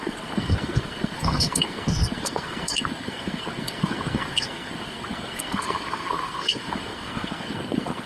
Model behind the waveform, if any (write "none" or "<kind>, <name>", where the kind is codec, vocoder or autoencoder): codec, SNAC